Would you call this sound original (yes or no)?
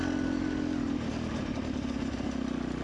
yes